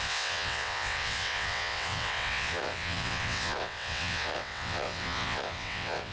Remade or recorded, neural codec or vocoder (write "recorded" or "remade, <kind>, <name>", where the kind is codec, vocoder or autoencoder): remade, vocoder, WaveNeXt